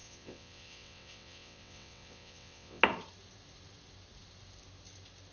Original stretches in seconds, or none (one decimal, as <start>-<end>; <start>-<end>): 2.8-5.3